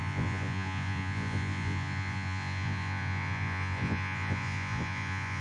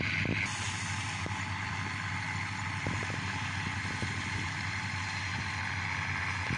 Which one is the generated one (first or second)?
first